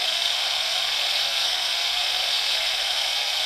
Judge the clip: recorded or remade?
remade